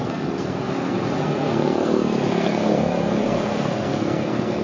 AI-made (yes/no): yes